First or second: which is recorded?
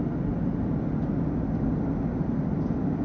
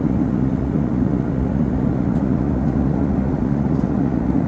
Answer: first